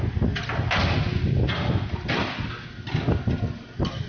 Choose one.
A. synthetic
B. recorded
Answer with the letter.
B